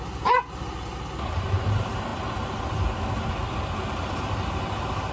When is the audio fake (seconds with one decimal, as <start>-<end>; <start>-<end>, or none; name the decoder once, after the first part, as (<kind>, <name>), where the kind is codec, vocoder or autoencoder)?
none